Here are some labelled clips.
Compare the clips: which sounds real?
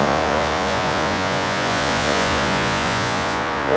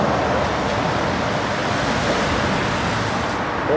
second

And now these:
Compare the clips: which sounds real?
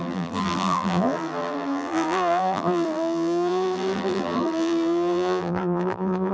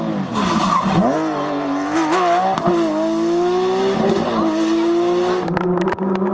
second